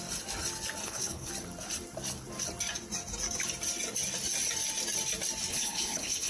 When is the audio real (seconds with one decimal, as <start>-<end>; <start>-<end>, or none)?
0.0-0.8; 1.3-5.5